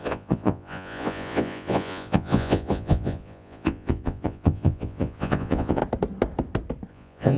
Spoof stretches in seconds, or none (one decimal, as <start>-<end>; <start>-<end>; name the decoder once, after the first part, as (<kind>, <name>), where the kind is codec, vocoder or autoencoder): 0.0-5.8 (vocoder, Vocos); 6.9-7.4